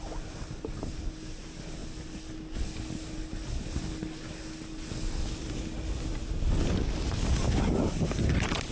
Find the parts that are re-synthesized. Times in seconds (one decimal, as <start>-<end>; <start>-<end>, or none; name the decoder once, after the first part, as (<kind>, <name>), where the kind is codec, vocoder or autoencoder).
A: none